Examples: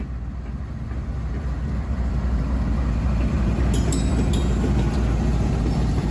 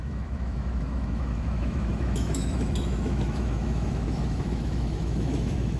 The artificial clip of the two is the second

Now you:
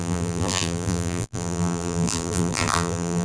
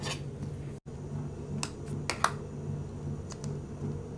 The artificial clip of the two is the first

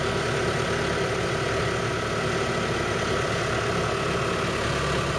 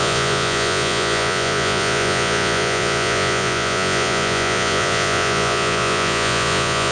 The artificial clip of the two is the second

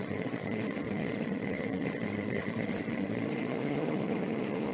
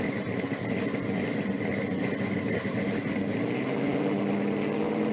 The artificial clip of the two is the first